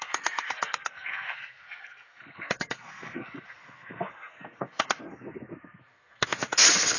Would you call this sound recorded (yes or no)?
no